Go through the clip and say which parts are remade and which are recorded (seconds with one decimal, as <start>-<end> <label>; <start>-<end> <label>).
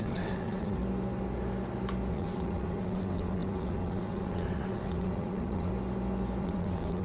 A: 0.0-0.8 remade; 0.8-2.1 recorded; 2.1-5.7 remade; 5.7-6.4 recorded; 6.4-7.0 remade